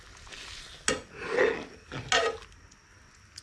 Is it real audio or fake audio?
real